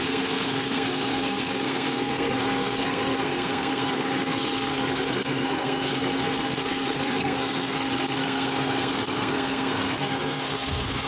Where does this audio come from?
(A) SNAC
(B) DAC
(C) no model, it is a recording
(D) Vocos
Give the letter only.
A